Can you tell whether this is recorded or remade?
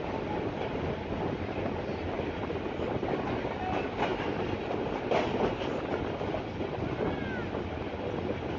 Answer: recorded